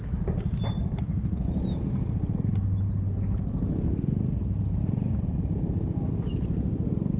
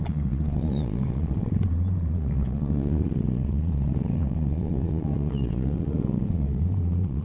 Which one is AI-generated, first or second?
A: second